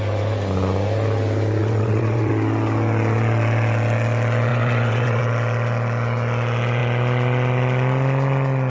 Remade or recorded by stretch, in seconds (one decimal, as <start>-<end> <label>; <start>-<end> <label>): 0.0-1.6 recorded; 1.6-2.3 remade; 2.3-4.5 recorded; 4.5-5.2 remade; 5.2-8.7 recorded